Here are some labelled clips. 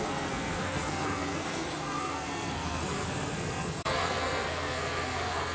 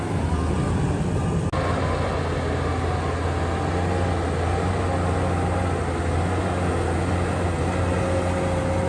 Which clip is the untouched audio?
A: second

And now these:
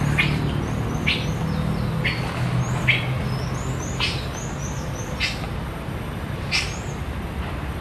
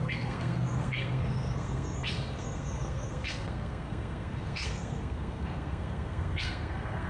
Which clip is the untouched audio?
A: first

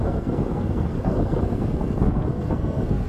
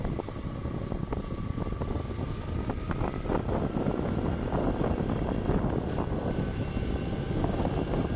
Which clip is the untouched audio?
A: second